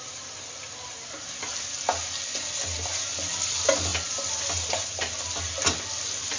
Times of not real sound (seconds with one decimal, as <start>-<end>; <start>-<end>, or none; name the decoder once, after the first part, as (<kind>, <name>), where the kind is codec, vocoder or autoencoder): none